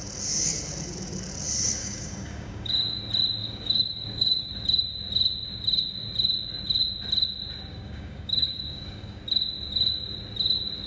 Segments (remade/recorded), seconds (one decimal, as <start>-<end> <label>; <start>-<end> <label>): 0.0-1.8 recorded; 1.8-3.0 remade; 3.0-3.4 recorded; 3.4-4.5 remade; 4.5-7.7 recorded; 7.7-9.2 remade; 9.2-10.9 recorded